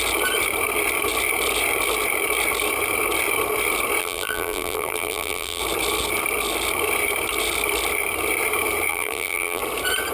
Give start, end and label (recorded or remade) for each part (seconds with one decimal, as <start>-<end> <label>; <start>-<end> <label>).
0.0-4.0 recorded; 4.0-5.6 remade; 5.6-8.9 recorded; 8.9-9.6 remade; 9.6-10.1 recorded